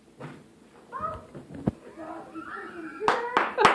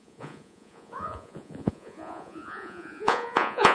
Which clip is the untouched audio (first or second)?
first